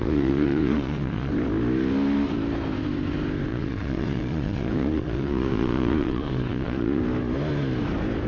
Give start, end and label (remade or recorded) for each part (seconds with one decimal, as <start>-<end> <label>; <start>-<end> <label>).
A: 0.0-1.3 remade; 1.3-3.5 recorded; 3.5-7.0 remade; 7.0-8.3 recorded